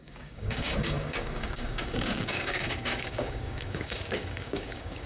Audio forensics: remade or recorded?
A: remade